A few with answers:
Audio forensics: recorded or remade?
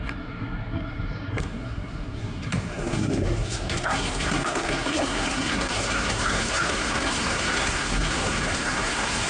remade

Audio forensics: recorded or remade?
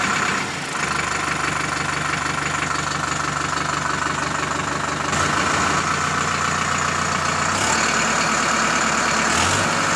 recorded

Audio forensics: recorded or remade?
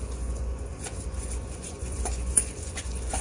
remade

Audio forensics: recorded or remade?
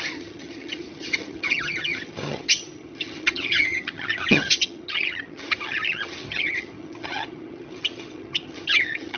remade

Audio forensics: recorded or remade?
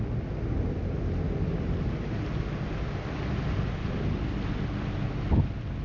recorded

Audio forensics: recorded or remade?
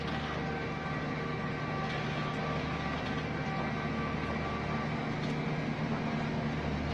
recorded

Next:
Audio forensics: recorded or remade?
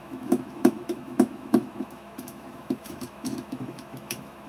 remade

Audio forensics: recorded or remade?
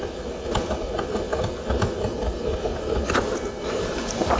recorded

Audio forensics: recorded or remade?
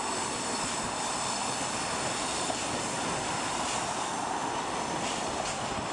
recorded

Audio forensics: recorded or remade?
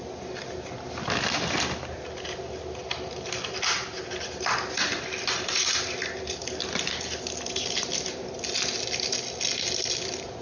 recorded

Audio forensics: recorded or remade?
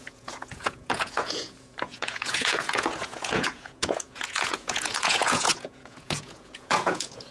remade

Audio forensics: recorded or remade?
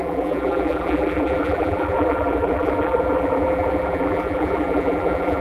remade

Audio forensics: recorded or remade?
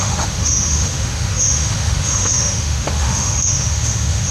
remade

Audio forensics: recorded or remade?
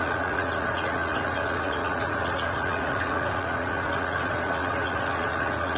remade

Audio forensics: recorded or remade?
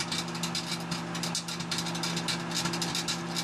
recorded